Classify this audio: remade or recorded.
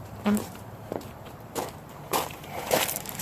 remade